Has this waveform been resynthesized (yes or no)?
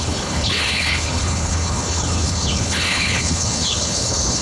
yes